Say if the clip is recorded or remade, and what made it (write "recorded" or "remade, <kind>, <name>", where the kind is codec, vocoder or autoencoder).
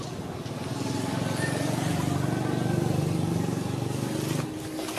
recorded